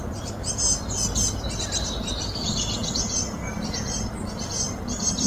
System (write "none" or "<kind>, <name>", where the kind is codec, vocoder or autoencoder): vocoder, BigVGAN v2